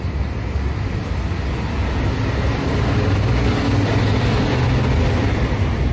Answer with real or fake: real